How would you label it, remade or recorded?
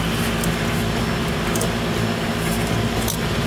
recorded